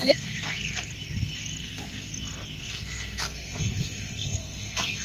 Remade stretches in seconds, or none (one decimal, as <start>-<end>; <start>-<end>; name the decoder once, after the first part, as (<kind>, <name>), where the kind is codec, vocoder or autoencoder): 0.0-0.9 (codec, SNAC); 1.6-2.1; 2.6-5.0